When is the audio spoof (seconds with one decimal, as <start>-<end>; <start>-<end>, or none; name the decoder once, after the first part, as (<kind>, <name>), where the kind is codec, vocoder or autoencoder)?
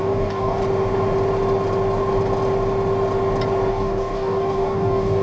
0.0-0.6 (codec, DAC); 3.7-5.2